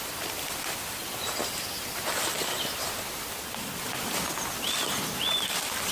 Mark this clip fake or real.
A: fake